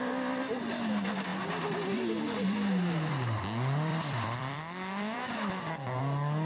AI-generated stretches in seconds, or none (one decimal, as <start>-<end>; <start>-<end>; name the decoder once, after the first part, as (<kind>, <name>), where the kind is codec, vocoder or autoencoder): 1.3-3.4 (vocoder, BigVGAN v2); 3.9-6.0